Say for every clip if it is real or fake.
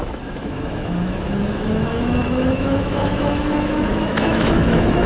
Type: fake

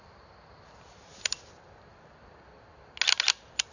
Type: real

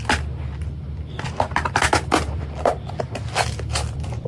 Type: real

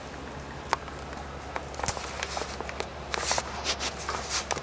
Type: real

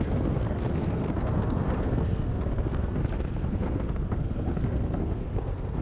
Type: fake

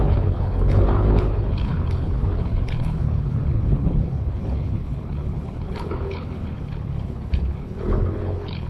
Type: fake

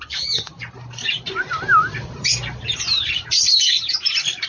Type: fake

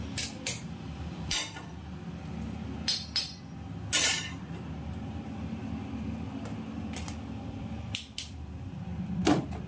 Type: real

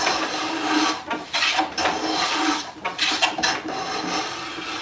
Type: real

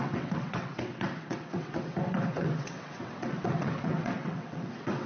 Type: fake